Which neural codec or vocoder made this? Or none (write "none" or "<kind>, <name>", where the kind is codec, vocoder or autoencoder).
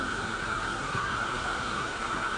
codec, SNAC